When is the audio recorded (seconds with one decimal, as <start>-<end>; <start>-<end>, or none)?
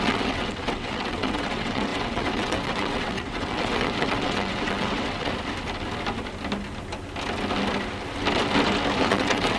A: 5.3-9.0